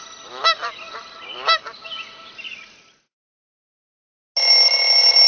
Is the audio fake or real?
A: real